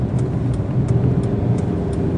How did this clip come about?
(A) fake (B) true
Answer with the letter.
B